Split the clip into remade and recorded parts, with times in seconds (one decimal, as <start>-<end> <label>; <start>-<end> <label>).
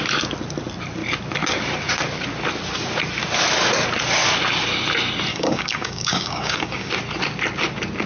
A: 0.0-5.3 recorded; 5.3-6.9 remade; 6.9-8.1 recorded